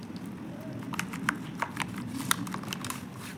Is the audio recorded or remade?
recorded